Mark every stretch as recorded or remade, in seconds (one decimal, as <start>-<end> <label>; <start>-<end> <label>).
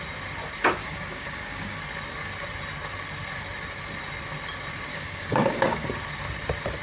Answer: 0.0-0.8 recorded; 0.8-1.8 remade; 1.8-4.9 recorded; 4.9-5.9 remade; 5.9-6.8 recorded